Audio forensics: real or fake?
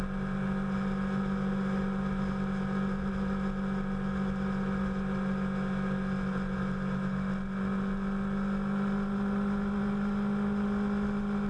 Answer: real